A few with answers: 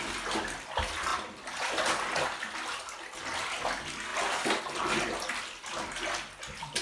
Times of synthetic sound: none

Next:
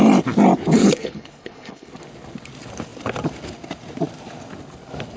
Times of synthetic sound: 0.8-1.9 (codec, HILCodec)